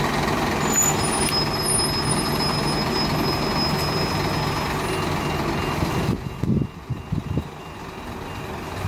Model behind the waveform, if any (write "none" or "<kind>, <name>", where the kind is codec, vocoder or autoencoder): none